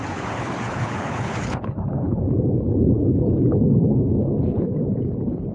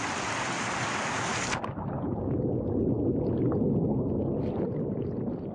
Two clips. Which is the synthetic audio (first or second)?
first